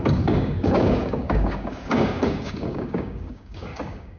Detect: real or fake fake